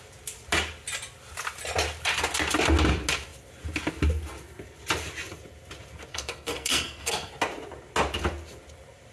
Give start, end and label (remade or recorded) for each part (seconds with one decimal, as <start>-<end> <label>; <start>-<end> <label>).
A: 0.0-6.1 recorded; 6.1-7.3 remade; 7.3-9.1 recorded